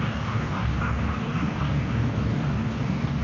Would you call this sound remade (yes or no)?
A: yes